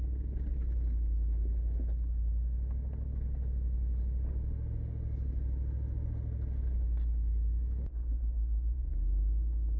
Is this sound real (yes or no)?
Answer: yes